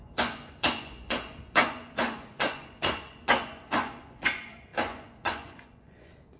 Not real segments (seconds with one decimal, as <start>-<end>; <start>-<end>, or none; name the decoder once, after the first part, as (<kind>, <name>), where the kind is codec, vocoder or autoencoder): 0.0-6.4 (vocoder, Vocos)